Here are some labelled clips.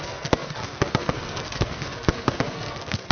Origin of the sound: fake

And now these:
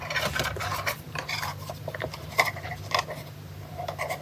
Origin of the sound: fake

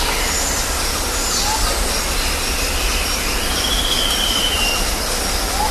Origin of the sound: real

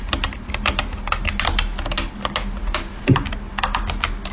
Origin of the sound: real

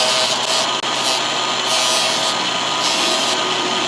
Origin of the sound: real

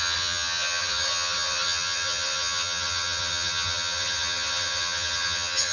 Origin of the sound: fake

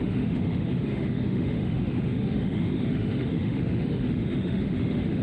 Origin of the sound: fake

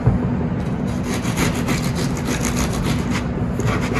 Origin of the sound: real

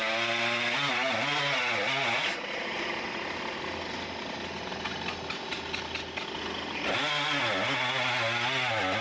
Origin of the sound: real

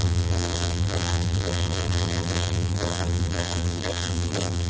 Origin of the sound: fake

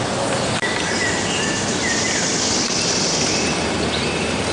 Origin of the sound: real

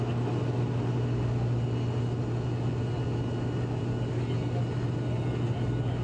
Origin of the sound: real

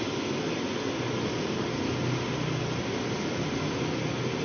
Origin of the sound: real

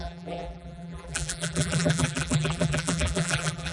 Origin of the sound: fake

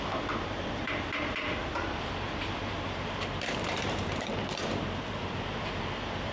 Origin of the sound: fake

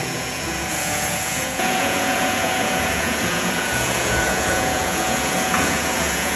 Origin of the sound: fake